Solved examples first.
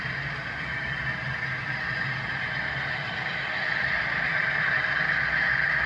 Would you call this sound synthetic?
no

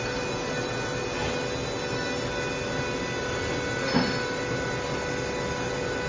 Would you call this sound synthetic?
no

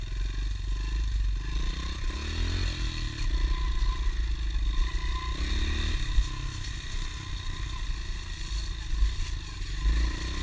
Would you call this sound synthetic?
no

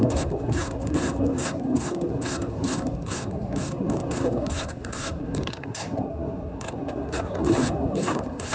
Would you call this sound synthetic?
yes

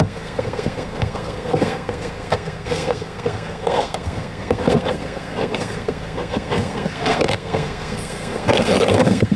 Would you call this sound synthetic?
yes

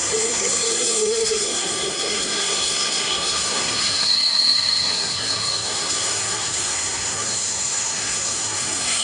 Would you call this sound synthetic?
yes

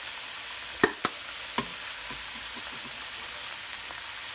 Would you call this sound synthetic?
no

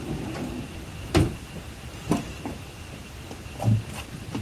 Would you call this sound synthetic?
no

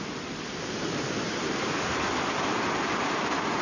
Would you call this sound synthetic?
no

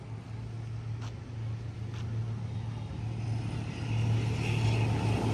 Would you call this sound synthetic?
no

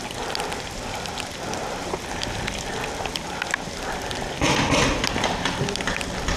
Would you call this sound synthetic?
no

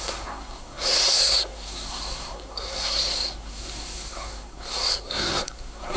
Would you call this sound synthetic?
yes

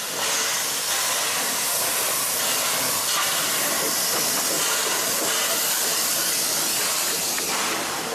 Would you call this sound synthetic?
no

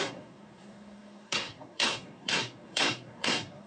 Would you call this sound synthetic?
yes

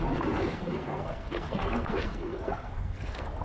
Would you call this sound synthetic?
yes